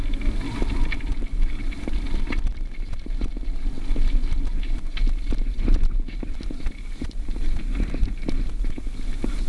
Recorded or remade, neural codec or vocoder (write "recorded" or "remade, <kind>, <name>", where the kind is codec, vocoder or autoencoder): recorded